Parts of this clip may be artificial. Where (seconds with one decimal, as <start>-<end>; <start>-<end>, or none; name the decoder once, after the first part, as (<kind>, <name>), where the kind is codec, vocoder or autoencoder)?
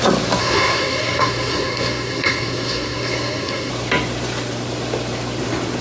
0.4-3.7 (codec, SNAC)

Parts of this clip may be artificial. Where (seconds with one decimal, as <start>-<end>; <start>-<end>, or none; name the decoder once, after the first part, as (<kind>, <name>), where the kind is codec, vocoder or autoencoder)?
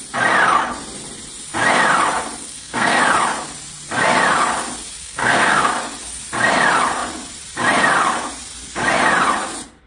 2.4-3.0 (codec, SNAC); 5.0-5.7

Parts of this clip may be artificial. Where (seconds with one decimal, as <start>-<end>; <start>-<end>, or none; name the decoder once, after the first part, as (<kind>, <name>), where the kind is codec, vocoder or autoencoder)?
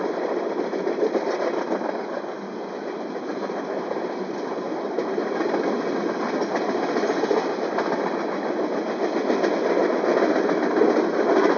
none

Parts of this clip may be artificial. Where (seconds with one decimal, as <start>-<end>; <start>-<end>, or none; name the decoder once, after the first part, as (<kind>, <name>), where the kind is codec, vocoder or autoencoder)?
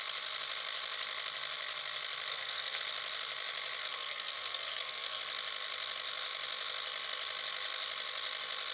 2.3-2.8 (codec, SNAC); 3.8-5.2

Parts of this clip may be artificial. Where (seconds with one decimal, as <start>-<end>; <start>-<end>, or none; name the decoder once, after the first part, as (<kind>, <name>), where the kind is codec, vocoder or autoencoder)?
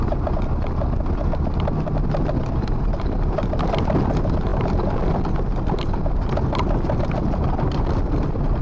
none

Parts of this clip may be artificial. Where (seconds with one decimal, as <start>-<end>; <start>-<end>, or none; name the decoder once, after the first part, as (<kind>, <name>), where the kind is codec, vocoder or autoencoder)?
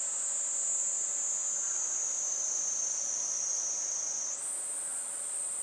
none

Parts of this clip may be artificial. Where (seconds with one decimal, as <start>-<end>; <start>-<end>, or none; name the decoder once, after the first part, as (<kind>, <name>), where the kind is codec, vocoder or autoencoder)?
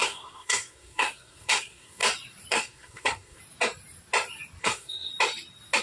0.0-2.0 (codec, SNAC); 2.5-3.4; 4.6-5.1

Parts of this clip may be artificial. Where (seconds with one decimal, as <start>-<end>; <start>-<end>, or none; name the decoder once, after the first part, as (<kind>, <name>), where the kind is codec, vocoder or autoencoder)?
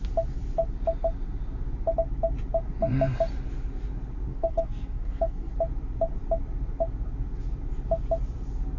4.3-5.5 (codec, SNAC)